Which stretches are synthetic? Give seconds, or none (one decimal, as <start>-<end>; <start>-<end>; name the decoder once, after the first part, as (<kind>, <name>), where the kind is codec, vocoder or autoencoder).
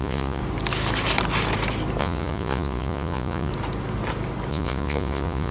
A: 0.0-0.4 (vocoder, Vocos); 2.0-3.5; 4.5-5.5